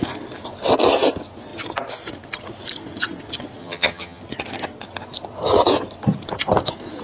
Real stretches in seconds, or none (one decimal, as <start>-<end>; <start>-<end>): 0.0-3.6; 4.2-7.0